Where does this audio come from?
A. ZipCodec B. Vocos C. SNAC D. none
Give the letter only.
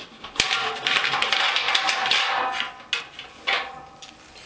D